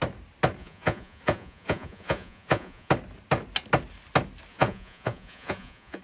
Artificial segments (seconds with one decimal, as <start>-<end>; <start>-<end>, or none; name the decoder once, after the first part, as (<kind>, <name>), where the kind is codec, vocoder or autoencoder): 0.6-2.9 (vocoder, Vocos); 4.5-6.0

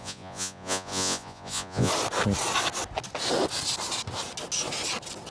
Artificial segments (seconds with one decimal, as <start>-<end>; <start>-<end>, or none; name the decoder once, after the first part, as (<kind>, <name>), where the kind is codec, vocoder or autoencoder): 0.0-1.9 (vocoder, Vocos)

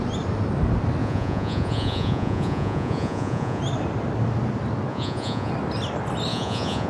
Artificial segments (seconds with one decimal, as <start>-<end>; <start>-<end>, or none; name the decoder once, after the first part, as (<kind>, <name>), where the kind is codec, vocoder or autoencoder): 1.0-3.6 (vocoder, Vocos); 4.9-5.5; 6.3-6.9